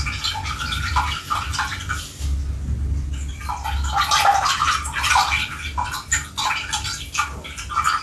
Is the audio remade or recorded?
recorded